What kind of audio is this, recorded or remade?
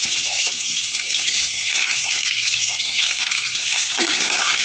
remade